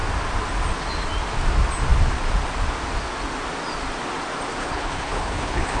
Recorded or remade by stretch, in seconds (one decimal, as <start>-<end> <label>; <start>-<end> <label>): 0.0-4.6 recorded; 4.6-5.8 remade